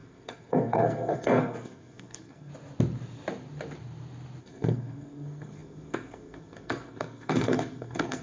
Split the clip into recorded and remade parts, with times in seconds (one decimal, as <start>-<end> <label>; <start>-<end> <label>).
0.0-2.5 remade; 2.5-4.4 recorded; 4.4-8.2 remade